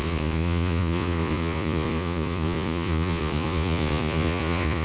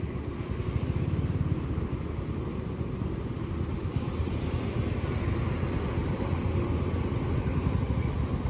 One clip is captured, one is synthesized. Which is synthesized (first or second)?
first